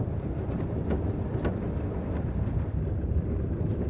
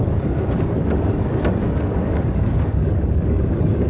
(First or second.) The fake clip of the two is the second